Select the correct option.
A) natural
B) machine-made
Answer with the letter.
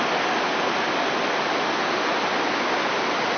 A